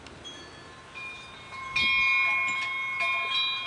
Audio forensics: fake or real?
real